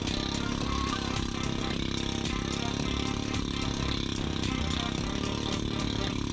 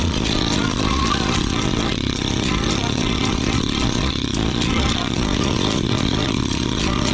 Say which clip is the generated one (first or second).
second